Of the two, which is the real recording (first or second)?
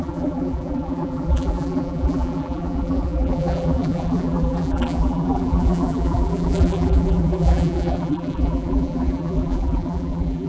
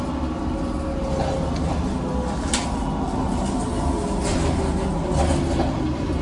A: second